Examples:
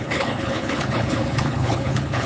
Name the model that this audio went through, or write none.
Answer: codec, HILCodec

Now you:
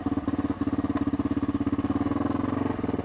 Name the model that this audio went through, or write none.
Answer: none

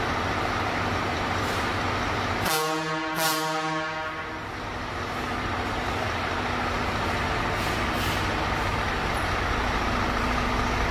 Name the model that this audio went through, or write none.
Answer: none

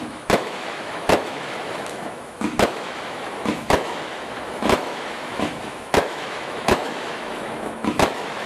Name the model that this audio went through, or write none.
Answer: autoencoder, DAC-VAE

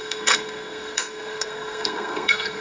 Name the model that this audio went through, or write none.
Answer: codec, SNAC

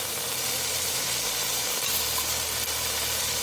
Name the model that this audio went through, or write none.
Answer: vocoder, BigVGAN v2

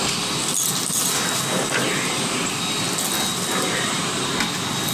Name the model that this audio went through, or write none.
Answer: none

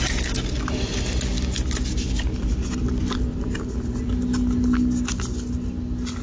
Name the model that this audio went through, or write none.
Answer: none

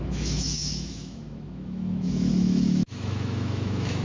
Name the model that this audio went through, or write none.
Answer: autoencoder, DAC-VAE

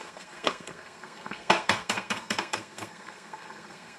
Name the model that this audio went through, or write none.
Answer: codec, SNAC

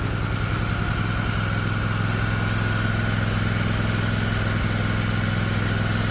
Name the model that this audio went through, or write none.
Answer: none